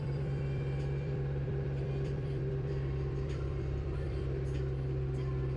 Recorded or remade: remade